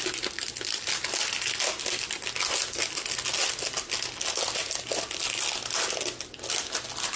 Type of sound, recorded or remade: recorded